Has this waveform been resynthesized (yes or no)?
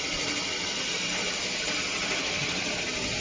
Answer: no